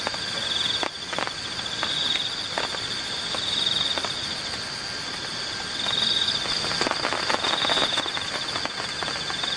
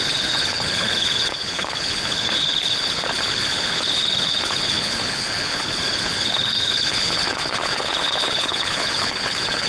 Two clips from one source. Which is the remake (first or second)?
second